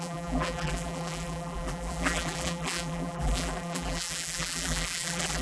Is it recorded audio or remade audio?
remade